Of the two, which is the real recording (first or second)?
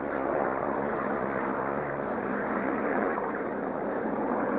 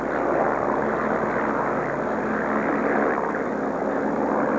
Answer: second